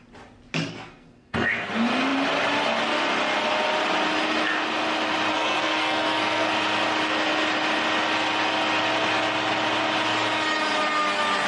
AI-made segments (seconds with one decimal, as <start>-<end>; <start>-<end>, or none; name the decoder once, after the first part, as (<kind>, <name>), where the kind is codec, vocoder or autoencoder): 0.7-1.7 (codec, SNAC); 5.3-6.5

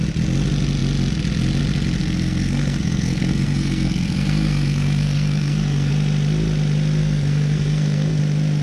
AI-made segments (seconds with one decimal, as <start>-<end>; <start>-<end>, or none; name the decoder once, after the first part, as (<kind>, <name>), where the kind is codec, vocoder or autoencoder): 2.0-5.9 (codec, SNAC); 7.0-8.2

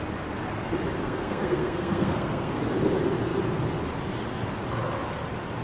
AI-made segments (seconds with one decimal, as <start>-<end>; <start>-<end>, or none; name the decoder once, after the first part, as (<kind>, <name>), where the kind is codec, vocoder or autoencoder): 1.0-2.6 (codec, SNAC)

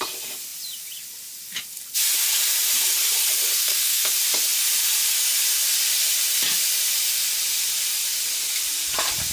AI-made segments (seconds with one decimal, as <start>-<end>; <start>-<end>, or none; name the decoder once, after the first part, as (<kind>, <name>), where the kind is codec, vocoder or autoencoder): 3.5-4.1 (codec, SNAC)

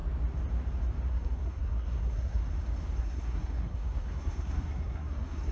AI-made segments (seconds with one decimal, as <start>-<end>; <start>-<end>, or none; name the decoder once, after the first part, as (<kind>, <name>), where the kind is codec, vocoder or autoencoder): 1.1-2.4 (codec, SNAC); 3.0-5.5

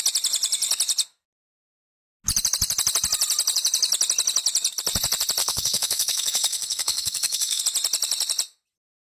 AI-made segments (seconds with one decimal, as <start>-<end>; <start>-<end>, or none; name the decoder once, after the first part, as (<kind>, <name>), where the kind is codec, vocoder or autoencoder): 5.4-7.6 (codec, SNAC)